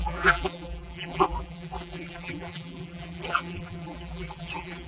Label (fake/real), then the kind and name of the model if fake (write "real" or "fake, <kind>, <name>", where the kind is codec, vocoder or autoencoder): fake, vocoder, BigVGAN v2